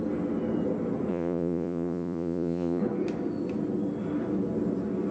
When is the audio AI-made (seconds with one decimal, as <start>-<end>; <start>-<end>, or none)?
1.1-2.8